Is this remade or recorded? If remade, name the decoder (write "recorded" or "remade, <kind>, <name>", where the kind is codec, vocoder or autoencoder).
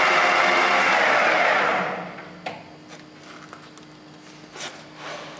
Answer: recorded